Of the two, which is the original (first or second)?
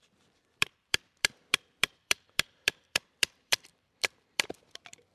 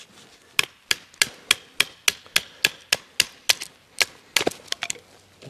second